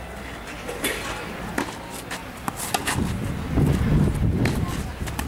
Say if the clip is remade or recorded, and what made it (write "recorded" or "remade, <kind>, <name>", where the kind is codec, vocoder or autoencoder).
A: recorded